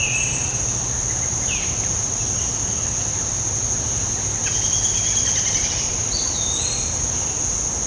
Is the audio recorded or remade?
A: recorded